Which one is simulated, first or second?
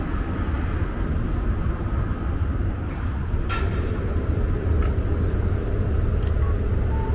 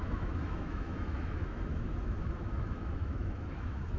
second